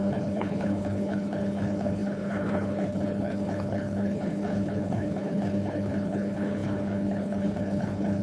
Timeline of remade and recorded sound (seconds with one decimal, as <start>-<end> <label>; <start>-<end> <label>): 0.0-8.2 remade